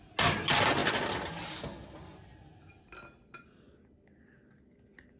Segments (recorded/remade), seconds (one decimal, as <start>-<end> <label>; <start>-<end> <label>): 0.0-5.2 recorded